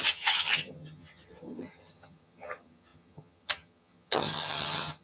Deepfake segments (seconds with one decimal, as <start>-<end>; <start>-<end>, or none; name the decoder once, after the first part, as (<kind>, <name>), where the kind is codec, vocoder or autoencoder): 0.0-5.0 (vocoder, HiFi-GAN)